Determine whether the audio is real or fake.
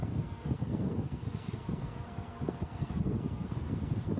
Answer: fake